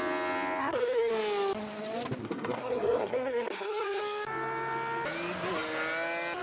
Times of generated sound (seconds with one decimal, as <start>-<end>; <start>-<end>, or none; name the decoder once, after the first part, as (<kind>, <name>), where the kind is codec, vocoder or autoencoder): 0.6-1.1 (codec, SNAC); 2.2-4.0